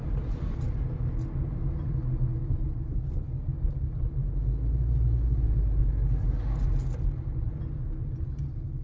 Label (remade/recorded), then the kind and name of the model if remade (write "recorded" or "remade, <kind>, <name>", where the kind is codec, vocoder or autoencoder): recorded